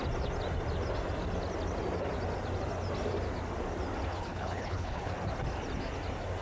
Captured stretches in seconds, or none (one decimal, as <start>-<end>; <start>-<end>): 0.0-4.1; 5.1-6.4